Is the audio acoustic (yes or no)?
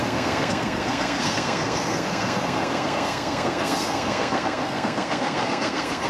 no